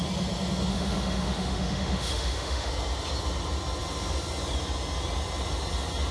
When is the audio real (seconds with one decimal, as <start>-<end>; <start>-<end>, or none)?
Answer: 0.0-0.7; 2.7-6.1